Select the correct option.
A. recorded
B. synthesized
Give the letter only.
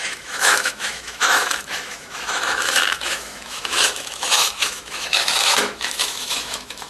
B